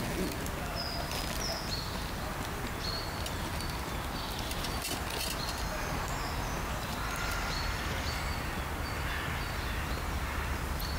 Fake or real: real